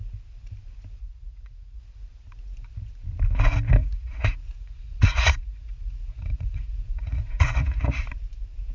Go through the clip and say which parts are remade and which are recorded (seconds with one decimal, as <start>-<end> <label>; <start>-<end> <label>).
0.0-1.0 recorded; 1.0-1.8 remade; 1.8-3.8 recorded; 3.8-8.0 remade; 8.0-8.7 recorded